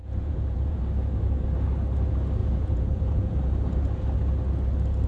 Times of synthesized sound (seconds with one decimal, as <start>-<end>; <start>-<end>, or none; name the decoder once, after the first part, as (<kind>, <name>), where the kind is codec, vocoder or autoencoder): 0.0-0.8 (vocoder, Vocos); 2.4-3.3